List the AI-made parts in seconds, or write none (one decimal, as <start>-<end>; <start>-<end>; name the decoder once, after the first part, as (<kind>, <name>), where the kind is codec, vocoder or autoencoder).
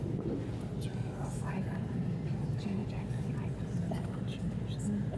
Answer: none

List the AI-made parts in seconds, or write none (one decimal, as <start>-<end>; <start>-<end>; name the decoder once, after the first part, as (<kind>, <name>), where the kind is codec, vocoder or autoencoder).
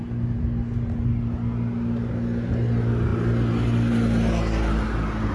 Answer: none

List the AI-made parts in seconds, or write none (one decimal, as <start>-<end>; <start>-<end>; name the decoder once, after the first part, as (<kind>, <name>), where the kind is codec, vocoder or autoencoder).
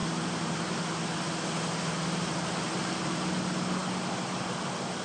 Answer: none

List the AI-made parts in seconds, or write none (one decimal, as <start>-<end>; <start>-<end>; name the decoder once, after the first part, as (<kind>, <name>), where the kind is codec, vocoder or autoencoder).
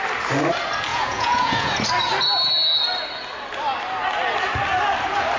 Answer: 0.9-1.7 (vocoder, Vocos)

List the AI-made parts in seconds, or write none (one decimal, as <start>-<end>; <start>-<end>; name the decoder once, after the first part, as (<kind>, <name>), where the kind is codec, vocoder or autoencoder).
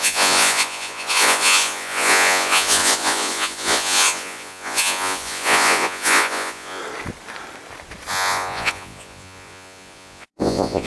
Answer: 0.0-6.8 (vocoder, Vocos); 8.1-10.9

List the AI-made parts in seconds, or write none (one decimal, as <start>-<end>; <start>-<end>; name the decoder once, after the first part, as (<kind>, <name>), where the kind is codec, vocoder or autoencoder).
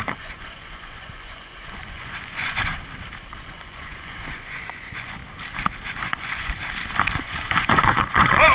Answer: 0.0-2.7 (vocoder, Vocos); 3.3-5.2; 6.0-6.6; 7.2-8.5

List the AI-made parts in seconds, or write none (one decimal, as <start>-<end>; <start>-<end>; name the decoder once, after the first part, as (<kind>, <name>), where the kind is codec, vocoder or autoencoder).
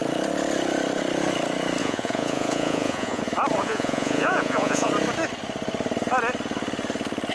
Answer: 1.8-3.2 (vocoder, Vocos); 3.6-4.9